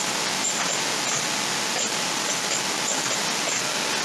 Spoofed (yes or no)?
no